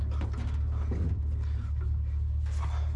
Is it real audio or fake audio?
real